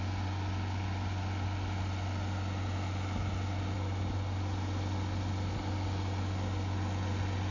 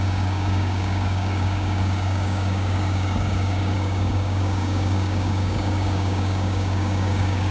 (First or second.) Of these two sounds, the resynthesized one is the second